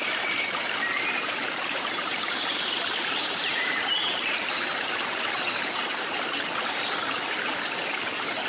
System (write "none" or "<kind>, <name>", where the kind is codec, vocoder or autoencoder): vocoder, BigVGAN v2